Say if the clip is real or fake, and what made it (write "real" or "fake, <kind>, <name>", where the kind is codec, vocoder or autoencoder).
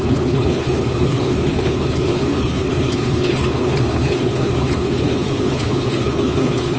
fake, codec, HILCodec